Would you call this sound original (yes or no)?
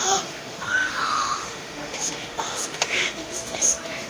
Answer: no